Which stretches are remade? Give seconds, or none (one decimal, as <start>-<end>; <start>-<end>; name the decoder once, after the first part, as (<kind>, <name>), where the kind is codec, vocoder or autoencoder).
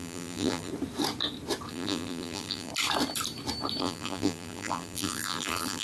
0.0-0.7 (vocoder, BigVGAN v2); 1.7-2.7; 3.8-5.8